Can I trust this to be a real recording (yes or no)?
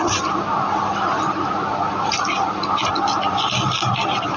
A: yes